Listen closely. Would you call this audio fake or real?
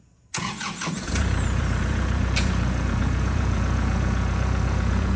fake